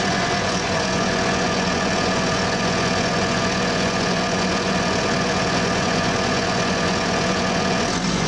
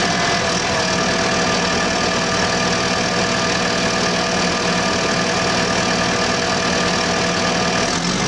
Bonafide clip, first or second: second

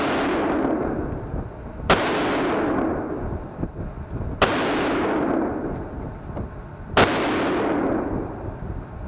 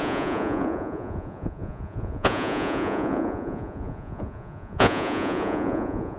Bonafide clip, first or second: first